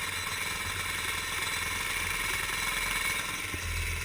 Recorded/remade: recorded